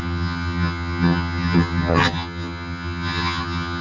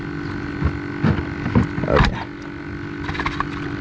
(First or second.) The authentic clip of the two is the second